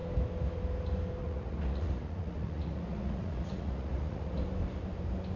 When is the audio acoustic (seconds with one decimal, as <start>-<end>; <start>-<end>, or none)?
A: 0.0-1.2; 4.4-5.4